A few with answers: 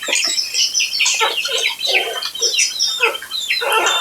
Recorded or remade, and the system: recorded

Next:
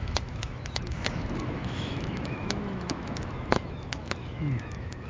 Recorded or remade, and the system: remade, autoencoder, DAC-VAE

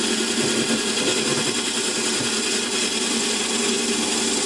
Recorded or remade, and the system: recorded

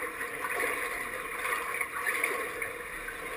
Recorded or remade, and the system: recorded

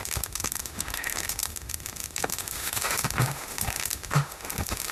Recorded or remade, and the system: remade, autoencoder, DAC-VAE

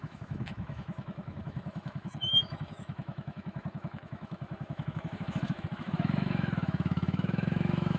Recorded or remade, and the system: remade, autoencoder, DAC-VAE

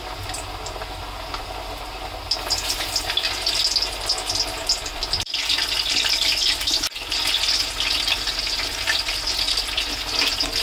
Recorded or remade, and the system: recorded